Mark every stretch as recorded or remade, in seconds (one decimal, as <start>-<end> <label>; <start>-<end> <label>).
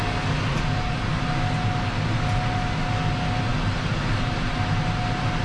0.0-5.4 recorded